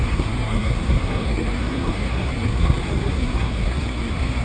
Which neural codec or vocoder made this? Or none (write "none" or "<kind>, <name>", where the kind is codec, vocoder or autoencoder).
codec, SNAC